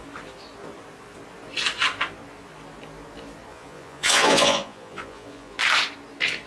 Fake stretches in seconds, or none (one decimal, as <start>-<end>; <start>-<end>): 3.5-5.6